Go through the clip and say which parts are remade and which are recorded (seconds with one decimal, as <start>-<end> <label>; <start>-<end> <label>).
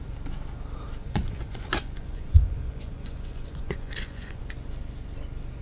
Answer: 0.0-1.0 recorded; 1.0-4.4 remade; 4.4-5.6 recorded